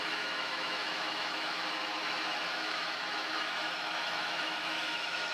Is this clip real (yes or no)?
no